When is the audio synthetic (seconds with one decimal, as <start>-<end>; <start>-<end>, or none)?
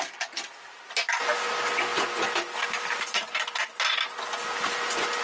none